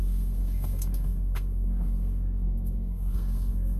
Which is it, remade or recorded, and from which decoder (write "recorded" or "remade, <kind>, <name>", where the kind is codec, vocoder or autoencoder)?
remade, codec, SNAC